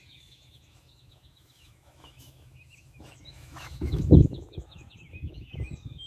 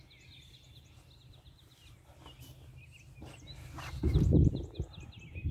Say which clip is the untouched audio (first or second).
second